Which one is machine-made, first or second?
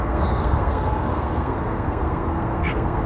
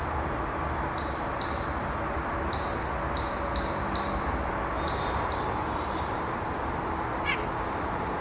first